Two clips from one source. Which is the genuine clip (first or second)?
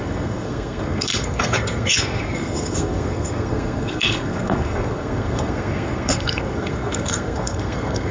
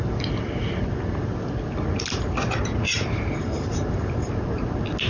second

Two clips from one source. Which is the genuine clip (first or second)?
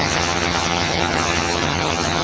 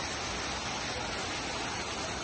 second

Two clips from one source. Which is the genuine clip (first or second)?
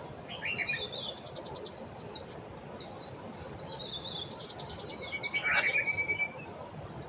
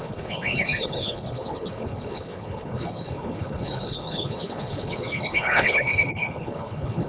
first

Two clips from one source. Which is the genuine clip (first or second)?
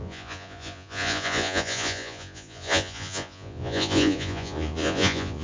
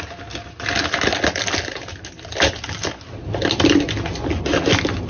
second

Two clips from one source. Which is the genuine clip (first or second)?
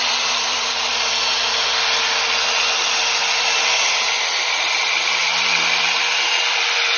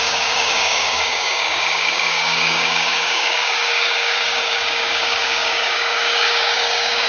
first